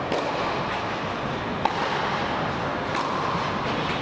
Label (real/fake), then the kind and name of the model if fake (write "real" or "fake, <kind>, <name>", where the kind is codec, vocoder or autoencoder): real